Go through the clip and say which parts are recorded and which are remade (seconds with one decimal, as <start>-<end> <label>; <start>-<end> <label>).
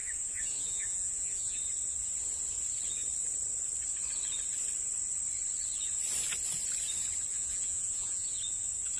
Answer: 0.0-1.6 remade; 1.6-7.3 recorded; 7.3-8.4 remade; 8.4-9.0 recorded